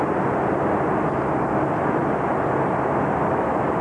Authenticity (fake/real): real